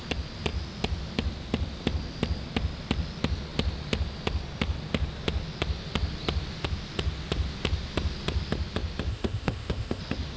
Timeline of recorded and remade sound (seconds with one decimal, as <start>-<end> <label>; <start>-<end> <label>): 0.0-9.1 recorded; 9.1-10.0 remade; 10.0-10.4 recorded